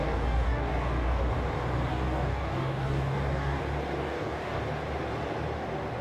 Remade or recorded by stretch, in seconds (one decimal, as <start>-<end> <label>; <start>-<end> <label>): 0.0-1.3 remade; 1.3-1.9 recorded; 1.9-3.6 remade; 3.6-4.0 recorded; 4.0-4.6 remade; 4.6-6.0 recorded

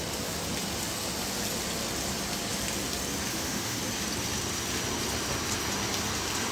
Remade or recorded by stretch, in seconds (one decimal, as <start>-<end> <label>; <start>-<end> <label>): 0.0-3.3 recorded; 3.3-3.8 remade; 3.8-6.5 recorded

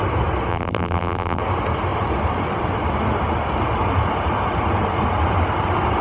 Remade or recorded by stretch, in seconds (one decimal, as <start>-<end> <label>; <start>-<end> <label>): 0.0-0.5 recorded; 0.5-1.4 remade; 1.4-6.0 recorded

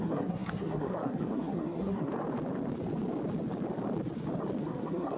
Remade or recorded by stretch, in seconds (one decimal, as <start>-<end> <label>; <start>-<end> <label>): 0.0-2.1 remade; 2.1-4.6 recorded; 4.6-5.2 remade

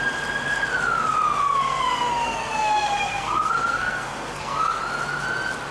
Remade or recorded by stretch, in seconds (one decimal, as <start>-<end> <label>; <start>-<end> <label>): 0.0-1.4 recorded; 1.4-4.8 remade; 4.8-5.7 recorded

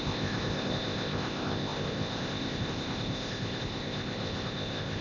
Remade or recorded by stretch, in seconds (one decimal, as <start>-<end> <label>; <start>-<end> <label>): 0.0-5.0 remade